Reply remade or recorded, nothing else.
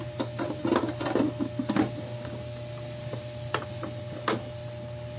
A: recorded